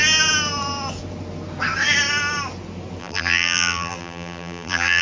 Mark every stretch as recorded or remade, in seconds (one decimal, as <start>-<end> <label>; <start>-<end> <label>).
0.0-3.0 recorded; 3.0-5.0 remade